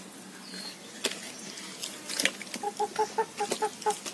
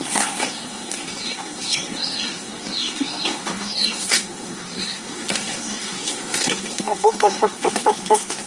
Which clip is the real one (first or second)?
first